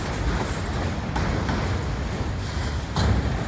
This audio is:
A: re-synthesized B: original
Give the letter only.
B